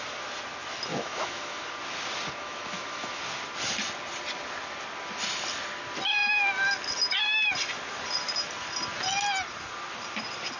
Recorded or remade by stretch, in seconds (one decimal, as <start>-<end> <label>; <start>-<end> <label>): 0.0-0.9 recorded; 0.9-1.7 remade; 1.7-2.4 recorded; 2.4-3.2 remade; 3.2-10.6 recorded